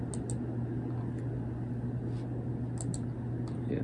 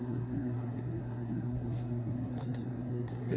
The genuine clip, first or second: first